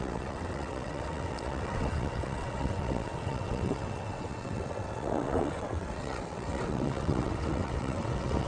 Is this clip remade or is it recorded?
remade